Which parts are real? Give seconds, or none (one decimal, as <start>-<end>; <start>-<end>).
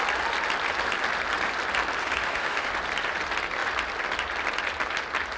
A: 0.0-2.0; 2.7-5.4